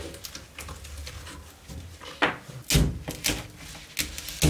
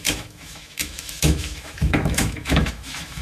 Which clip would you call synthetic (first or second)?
second